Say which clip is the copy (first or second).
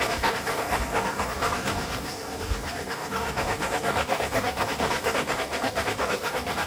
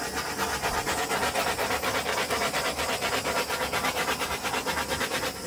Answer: first